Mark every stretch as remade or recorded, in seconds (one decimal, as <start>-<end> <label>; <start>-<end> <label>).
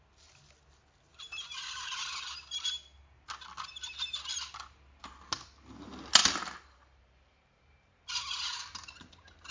0.0-6.2 recorded; 6.2-8.1 remade; 8.1-9.5 recorded